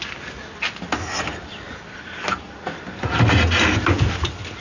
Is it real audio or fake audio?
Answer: real